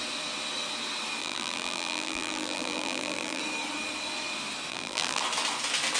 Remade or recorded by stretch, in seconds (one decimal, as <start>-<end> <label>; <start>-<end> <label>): 0.0-1.2 recorded; 1.2-3.4 remade; 3.4-4.7 recorded; 4.7-5.2 remade; 5.2-6.0 recorded

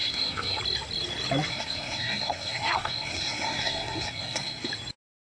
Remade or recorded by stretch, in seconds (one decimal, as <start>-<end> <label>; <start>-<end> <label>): 0.0-0.6 remade; 0.6-1.5 recorded; 1.5-4.7 remade; 4.7-5.4 recorded